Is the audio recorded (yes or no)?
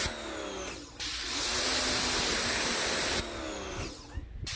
yes